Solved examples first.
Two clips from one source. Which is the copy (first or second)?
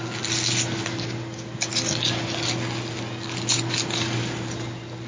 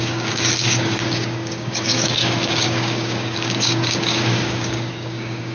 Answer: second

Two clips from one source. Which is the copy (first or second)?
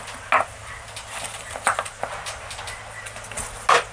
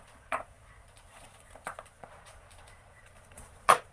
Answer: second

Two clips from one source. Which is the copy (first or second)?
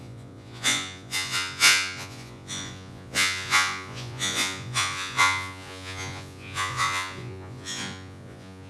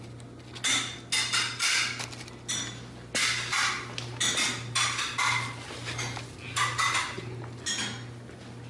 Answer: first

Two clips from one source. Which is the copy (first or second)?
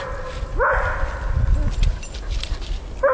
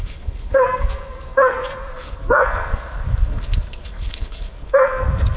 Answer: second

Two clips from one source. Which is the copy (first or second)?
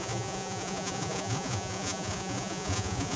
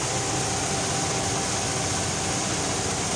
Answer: first